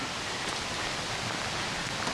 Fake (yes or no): no